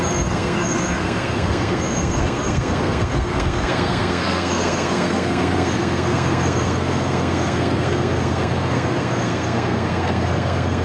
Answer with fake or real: fake